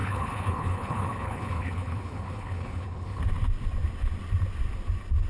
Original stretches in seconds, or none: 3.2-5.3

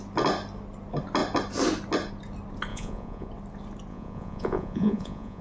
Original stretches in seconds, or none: 0.0-2.7; 3.3-3.9

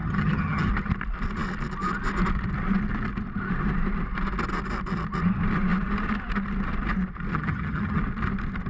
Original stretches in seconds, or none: 0.7-7.3; 8.0-8.7

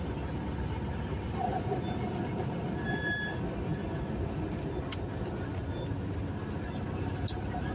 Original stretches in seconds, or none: 0.0-7.7

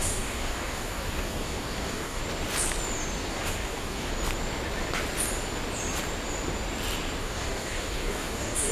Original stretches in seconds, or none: 2.2-3.3; 4.1-7.2